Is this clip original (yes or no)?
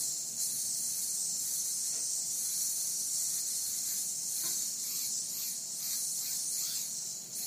yes